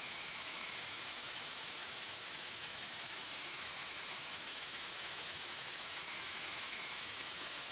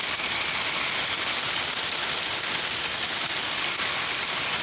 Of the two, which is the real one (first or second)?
second